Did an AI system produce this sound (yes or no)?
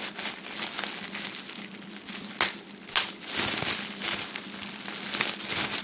no